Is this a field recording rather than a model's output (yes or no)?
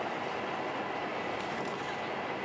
yes